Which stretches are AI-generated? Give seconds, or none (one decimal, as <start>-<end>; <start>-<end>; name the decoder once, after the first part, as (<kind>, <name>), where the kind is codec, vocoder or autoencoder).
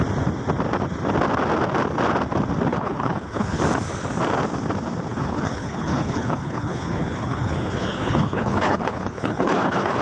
2.7-3.6 (codec, HILCodec); 5.1-10.0